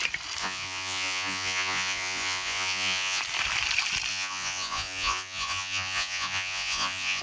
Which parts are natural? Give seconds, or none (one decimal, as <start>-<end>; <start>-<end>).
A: 0.0-0.4; 3.2-4.1